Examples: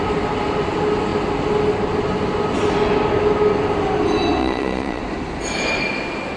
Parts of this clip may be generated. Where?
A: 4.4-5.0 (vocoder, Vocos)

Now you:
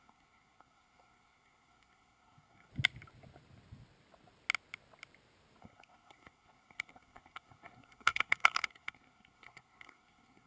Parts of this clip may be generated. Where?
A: 0.0-2.7 (codec, SNAC); 5.6-10.5

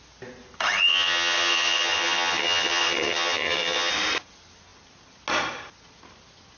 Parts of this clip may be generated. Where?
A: 0.9-3.9 (vocoder, HiFi-GAN)

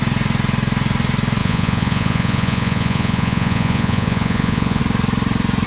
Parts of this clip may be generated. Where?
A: 1.4-4.8 (vocoder, Vocos)

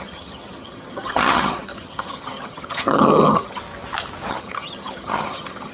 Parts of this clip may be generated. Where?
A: 0.0-3.6 (vocoder, HiFi-GAN); 4.3-5.7

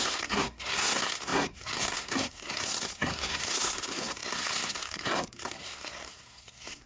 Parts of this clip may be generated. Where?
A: 0.0-6.9 (codec, SNAC)

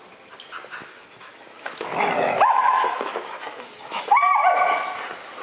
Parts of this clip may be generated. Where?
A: 0.8-4.0 (autoencoder, DAC-VAE)

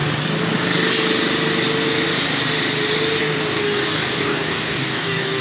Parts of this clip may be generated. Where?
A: 3.2-5.4 (codec, DAC)